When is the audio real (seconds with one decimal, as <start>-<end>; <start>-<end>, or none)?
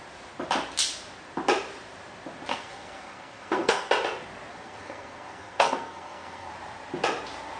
0.0-2.5; 3.9-4.5; 6.5-7.6